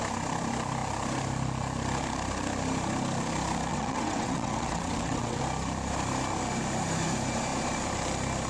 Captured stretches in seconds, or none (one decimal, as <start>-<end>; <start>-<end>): 0.0-3.7; 5.4-8.5